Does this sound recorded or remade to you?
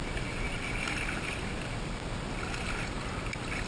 recorded